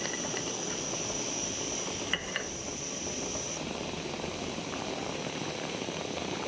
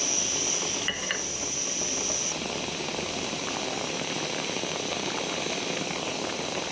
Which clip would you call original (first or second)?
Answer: second